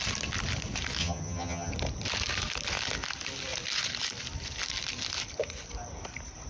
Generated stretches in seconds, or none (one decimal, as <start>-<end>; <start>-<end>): 1.0-1.7